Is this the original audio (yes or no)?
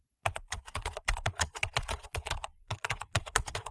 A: no